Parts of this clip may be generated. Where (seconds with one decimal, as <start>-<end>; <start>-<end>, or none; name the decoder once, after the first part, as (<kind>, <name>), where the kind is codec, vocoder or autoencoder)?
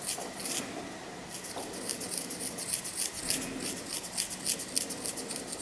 none